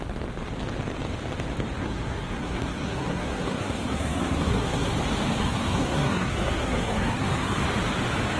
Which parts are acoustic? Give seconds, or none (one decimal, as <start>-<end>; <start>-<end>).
0.0-1.8; 4.9-5.4; 7.5-8.4